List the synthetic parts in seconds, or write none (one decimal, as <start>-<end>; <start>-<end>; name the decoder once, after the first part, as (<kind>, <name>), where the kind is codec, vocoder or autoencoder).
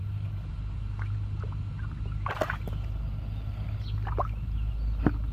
none